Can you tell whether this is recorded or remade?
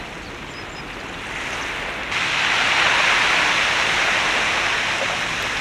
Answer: recorded